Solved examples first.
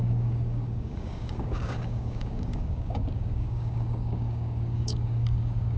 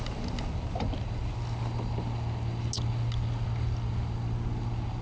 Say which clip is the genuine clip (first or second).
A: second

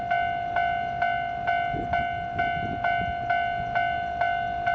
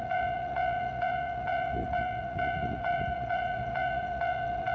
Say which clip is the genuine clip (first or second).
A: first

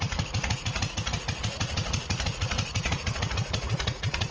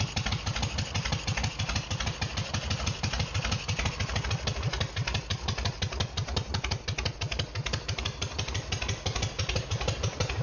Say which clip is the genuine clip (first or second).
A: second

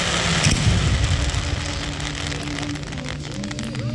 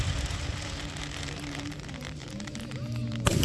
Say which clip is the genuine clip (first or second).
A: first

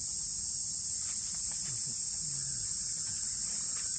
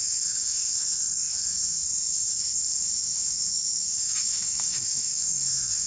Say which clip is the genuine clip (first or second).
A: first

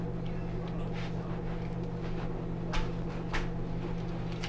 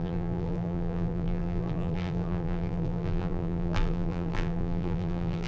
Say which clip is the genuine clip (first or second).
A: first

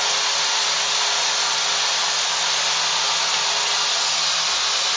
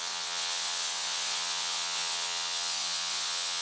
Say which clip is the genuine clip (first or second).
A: first